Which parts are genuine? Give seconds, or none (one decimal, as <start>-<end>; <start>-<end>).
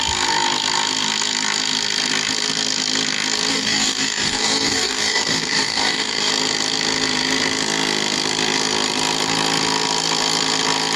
0.0-3.5; 6.3-11.0